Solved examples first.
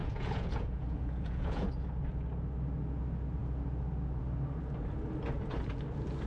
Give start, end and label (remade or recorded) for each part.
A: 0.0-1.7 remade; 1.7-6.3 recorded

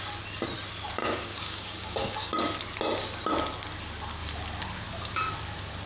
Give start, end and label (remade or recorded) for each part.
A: 0.0-1.0 recorded; 1.0-2.3 remade; 2.3-5.9 recorded

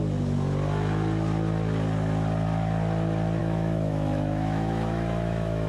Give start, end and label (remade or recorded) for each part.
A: 0.0-3.4 recorded; 3.4-5.7 remade

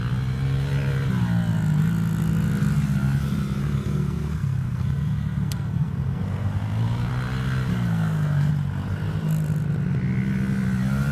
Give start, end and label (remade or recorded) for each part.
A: 0.0-3.6 recorded; 3.6-7.1 remade; 7.1-7.7 recorded; 7.7-8.5 remade; 8.5-11.1 recorded

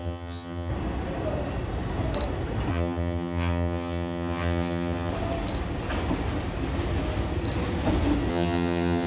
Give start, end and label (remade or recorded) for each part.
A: 0.0-0.7 remade; 0.7-2.7 recorded; 2.7-5.1 remade; 5.1-8.3 recorded; 8.3-9.1 remade